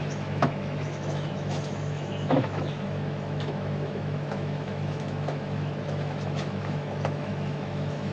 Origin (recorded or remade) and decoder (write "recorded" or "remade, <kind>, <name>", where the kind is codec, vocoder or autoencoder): remade, autoencoder, DAC-VAE